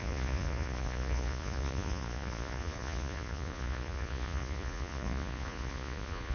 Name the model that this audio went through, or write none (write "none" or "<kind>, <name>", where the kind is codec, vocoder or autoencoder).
vocoder, Vocos